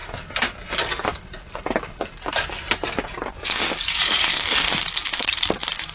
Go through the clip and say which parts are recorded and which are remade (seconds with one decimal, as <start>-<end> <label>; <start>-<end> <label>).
0.0-5.9 recorded